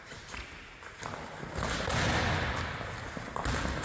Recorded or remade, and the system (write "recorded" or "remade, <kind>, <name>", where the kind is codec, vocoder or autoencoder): recorded